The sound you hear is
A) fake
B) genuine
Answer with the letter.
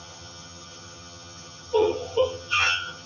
A